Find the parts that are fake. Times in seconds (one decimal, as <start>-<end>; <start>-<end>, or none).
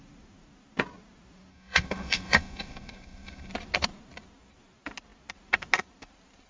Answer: 1.5-3.5